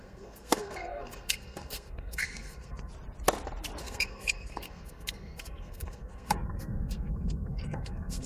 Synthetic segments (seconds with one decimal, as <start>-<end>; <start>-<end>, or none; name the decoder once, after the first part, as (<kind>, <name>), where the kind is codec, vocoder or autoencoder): 0.0-2.9 (codec, SNAC); 3.8-8.3